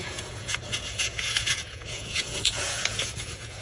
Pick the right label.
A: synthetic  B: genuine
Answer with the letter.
A